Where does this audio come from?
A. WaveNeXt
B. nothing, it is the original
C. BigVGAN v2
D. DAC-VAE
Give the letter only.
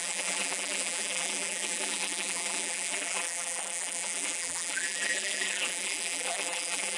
C